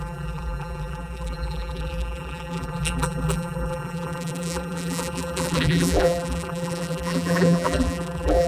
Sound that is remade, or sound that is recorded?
remade